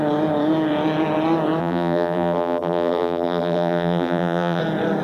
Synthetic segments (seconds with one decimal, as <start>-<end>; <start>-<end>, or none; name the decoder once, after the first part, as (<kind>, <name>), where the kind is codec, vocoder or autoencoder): 1.6-4.6 (vocoder, BigVGAN v2)